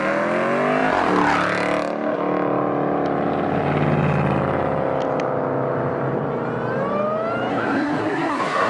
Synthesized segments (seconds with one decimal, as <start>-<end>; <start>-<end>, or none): 7.5-8.7